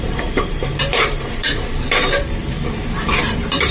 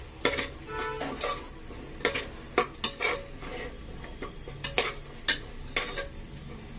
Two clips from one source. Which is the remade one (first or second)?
first